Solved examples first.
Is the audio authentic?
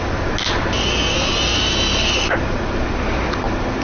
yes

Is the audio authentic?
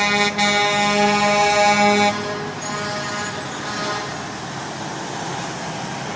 yes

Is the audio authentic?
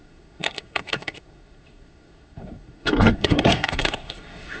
no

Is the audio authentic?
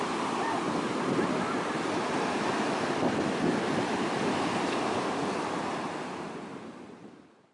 yes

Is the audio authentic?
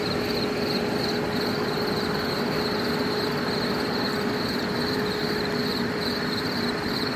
yes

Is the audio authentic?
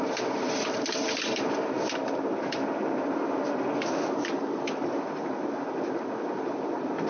yes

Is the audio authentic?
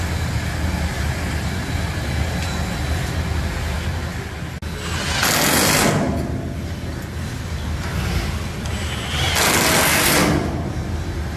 yes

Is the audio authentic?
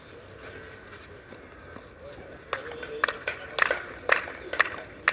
yes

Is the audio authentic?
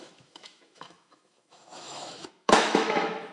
no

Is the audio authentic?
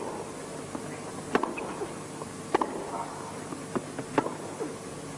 yes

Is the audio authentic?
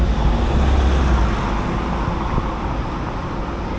yes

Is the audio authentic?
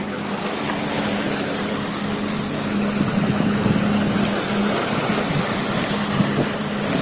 yes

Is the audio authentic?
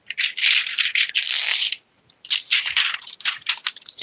yes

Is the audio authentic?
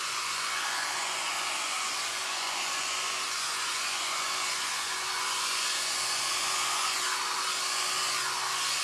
no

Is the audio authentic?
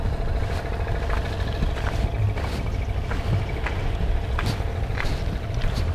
yes